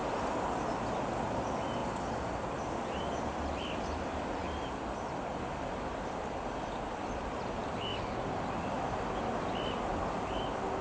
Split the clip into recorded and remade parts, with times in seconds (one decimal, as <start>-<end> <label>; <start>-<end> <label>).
0.0-1.8 remade; 1.8-2.5 recorded; 2.5-7.9 remade; 7.9-10.0 recorded; 10.0-10.8 remade